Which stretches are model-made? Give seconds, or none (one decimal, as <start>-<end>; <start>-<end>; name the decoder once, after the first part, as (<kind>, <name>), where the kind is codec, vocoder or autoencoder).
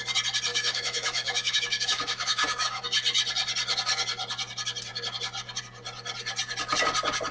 0.5-2.8 (autoencoder, DAC-VAE)